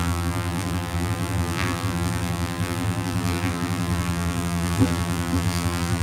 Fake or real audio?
fake